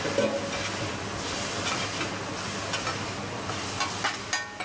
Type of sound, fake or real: real